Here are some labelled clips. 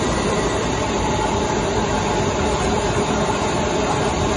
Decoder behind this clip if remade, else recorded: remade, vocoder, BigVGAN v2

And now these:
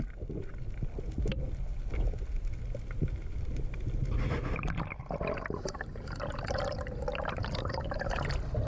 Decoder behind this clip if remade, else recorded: recorded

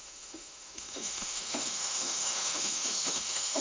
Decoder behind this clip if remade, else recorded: remade, autoencoder, DAC-VAE